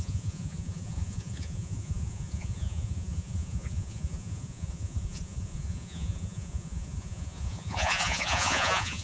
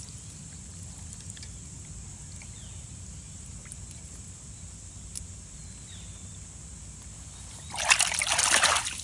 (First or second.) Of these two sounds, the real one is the second